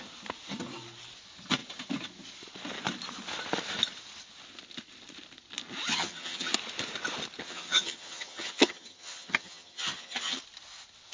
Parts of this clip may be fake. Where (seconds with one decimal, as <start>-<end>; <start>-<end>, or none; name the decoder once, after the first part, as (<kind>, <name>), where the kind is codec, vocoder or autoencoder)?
5.9-6.5 (vocoder, HiFi-GAN); 7.4-10.4